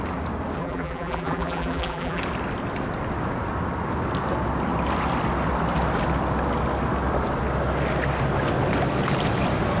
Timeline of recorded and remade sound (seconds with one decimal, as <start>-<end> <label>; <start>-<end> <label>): 0.0-0.6 recorded; 0.6-2.2 remade; 2.2-9.8 recorded